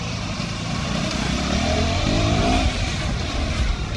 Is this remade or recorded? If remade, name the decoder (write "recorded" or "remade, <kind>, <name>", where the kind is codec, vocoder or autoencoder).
recorded